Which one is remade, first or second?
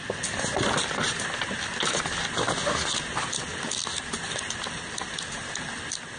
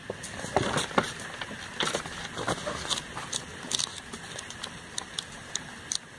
second